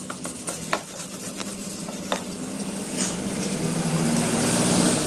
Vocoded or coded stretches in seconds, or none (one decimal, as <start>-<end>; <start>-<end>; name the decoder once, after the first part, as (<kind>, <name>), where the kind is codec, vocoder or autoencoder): none